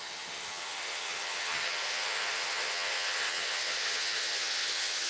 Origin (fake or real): fake